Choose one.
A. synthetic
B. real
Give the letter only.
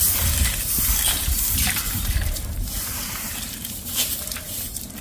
A